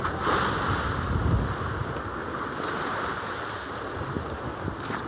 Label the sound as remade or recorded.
recorded